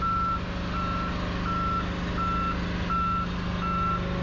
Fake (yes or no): no